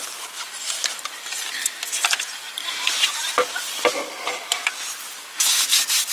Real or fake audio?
real